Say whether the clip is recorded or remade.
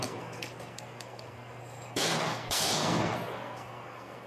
remade